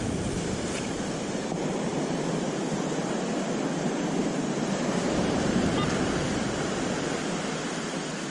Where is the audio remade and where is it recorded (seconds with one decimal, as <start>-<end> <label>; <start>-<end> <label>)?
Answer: 0.0-1.9 remade; 1.9-4.2 recorded; 4.2-7.2 remade; 7.2-8.3 recorded